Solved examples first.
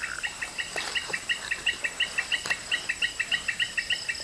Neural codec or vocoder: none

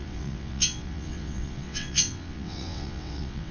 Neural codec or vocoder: vocoder, WaveNeXt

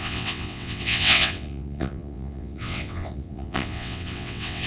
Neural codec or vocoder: vocoder, WaveNeXt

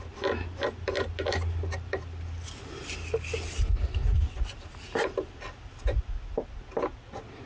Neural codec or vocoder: none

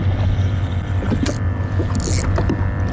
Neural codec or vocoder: none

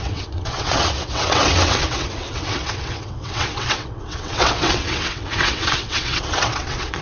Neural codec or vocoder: vocoder, WaveNeXt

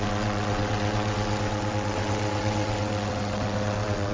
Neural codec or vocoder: vocoder, WaveNeXt